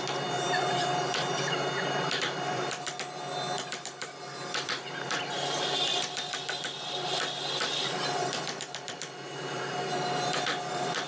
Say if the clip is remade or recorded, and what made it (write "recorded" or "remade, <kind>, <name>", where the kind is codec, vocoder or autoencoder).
remade, vocoder, BigVGAN v2